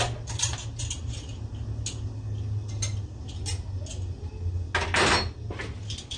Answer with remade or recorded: recorded